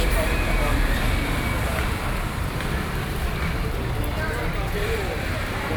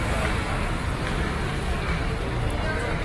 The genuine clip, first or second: second